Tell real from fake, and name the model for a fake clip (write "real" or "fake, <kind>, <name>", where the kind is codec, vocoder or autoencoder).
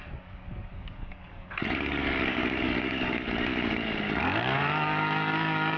fake, codec, DAC